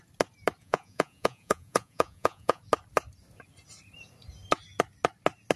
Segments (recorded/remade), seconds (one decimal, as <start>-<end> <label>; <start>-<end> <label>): 0.0-0.6 recorded; 0.6-2.6 remade; 2.6-5.6 recorded